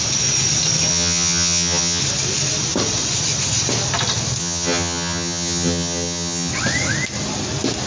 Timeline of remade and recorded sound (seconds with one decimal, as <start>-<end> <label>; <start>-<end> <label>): 0.0-0.9 recorded; 0.9-2.0 remade; 2.0-4.4 recorded; 4.4-6.5 remade; 6.5-7.9 recorded